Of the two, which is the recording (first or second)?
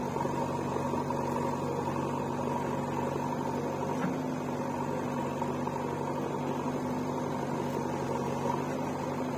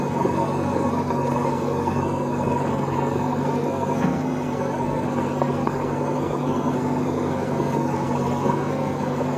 first